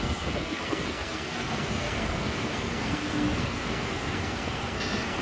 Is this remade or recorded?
remade